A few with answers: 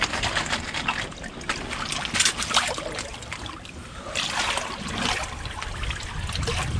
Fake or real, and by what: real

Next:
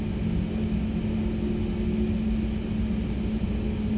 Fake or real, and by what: real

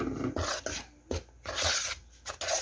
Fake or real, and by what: real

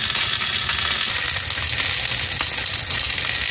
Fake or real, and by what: real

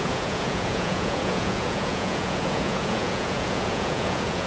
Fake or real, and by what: fake, vocoder, Vocos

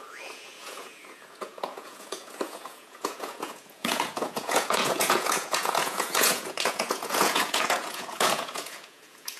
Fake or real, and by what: fake, vocoder, Vocos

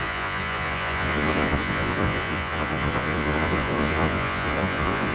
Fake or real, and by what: fake, vocoder, Vocos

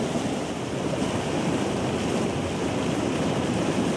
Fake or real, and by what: real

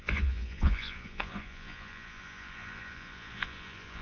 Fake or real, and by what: fake, vocoder, Vocos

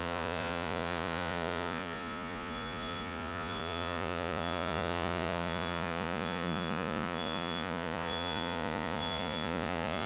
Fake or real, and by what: fake, vocoder, Vocos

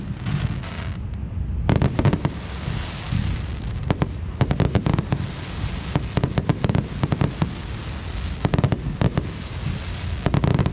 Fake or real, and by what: real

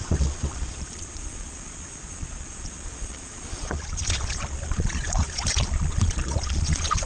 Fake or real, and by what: fake, vocoder, Vocos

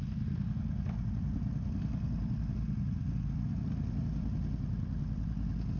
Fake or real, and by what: real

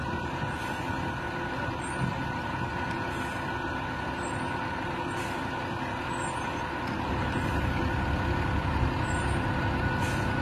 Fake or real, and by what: real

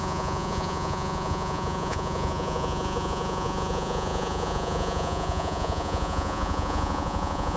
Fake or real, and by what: fake, vocoder, Vocos